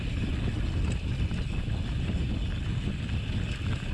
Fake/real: real